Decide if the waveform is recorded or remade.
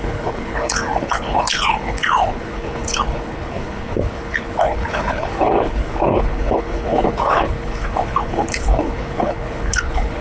remade